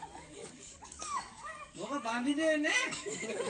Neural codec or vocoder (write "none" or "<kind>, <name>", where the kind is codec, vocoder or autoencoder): codec, DAC